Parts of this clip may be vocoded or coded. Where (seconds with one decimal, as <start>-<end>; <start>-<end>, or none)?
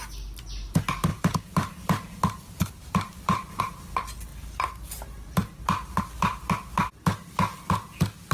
1.1-3.6; 4.3-6.0